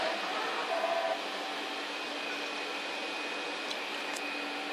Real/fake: real